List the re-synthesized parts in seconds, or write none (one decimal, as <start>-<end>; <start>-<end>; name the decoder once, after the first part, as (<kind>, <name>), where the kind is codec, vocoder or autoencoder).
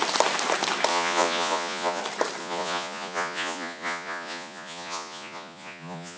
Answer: 0.9-2.0 (vocoder, Vocos); 2.4-6.2